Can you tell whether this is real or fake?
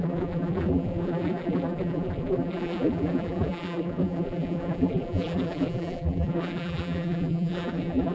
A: fake